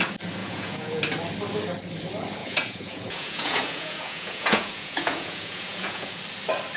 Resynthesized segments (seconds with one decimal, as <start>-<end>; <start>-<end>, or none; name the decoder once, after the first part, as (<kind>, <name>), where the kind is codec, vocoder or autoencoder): 0.4-1.0 (vocoder, Vocos); 2.4-6.2